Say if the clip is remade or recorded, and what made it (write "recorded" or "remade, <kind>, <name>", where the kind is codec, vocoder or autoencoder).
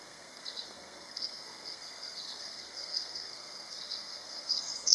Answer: remade, codec, SNAC